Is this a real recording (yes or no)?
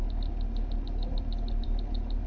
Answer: yes